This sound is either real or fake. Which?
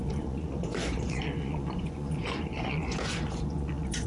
fake